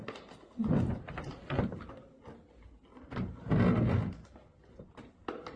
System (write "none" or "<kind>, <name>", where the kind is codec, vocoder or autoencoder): none